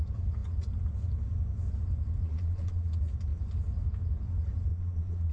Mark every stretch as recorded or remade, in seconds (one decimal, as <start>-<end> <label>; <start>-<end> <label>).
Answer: 0.0-2.2 recorded; 2.2-2.9 remade; 2.9-4.7 recorded; 4.7-5.3 remade